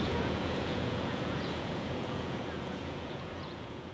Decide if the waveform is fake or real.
fake